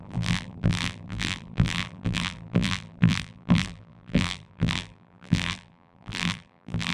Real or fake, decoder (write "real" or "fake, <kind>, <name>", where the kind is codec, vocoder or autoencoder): fake, vocoder, BigVGAN v2